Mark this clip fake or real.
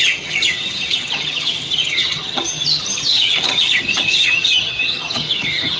fake